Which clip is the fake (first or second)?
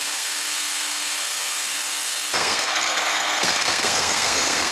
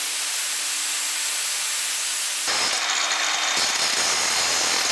first